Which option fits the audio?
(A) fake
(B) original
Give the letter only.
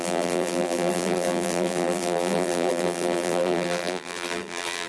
A